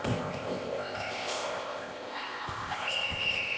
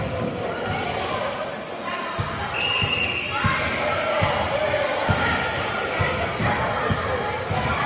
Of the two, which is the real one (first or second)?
second